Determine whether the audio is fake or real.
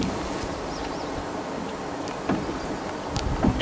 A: real